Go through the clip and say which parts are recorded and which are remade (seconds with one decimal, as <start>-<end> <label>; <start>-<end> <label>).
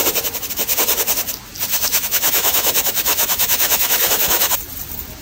0.0-1.7 recorded; 1.7-4.6 remade; 4.6-5.2 recorded